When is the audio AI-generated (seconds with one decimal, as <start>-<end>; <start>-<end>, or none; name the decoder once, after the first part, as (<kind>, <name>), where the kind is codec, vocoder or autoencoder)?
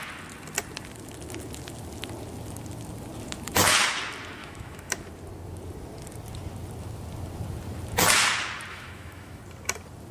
4.4-5.1 (autoencoder, DAC-VAE); 8.7-9.4